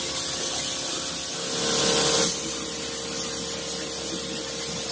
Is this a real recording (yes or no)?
yes